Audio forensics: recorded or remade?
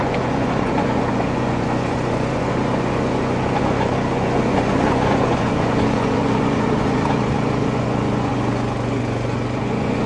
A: remade